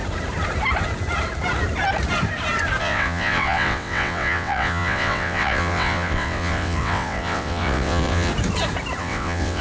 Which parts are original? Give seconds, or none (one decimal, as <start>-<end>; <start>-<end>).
0.0-2.8; 8.3-9.0